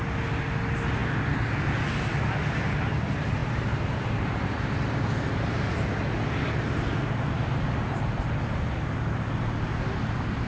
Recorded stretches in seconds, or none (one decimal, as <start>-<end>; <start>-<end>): 0.0-3.4; 4.5-10.5